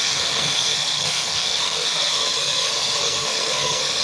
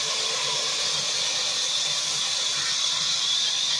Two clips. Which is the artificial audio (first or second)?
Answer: first